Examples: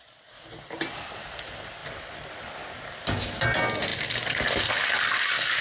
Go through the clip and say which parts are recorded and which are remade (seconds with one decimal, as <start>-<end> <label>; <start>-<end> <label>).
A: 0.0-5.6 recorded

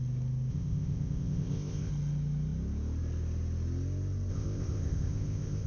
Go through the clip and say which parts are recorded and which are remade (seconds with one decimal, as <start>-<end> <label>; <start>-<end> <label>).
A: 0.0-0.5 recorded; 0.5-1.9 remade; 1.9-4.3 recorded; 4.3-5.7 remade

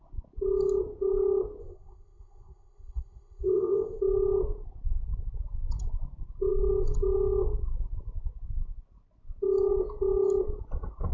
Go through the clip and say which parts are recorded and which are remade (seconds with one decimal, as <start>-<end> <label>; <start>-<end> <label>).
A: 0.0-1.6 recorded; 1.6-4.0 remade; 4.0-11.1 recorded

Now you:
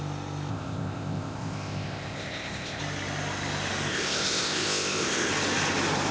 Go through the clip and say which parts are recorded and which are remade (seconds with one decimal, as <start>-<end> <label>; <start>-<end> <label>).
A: 0.0-0.5 recorded; 0.5-2.8 remade; 2.8-3.9 recorded; 3.9-5.3 remade; 5.3-6.1 recorded

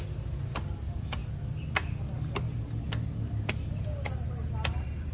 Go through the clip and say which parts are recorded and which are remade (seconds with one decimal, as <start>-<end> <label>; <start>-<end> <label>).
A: 0.0-5.1 recorded

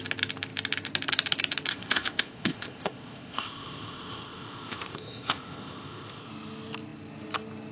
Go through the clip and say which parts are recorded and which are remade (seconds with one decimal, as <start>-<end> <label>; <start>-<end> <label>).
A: 0.0-1.7 recorded; 1.7-6.3 remade; 6.3-7.7 recorded

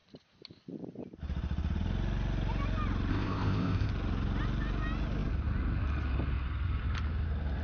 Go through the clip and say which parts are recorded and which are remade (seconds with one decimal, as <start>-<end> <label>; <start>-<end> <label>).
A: 0.0-3.1 recorded; 3.1-3.9 remade; 3.9-7.6 recorded

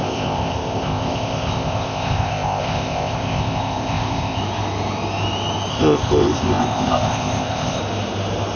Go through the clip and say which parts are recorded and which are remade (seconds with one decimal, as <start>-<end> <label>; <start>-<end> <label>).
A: 0.0-4.4 remade; 4.4-5.7 recorded; 5.7-7.8 remade; 7.8-8.6 recorded